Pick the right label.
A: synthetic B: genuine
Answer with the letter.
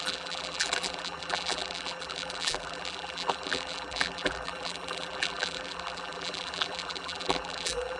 A